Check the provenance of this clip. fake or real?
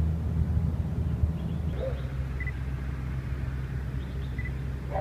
real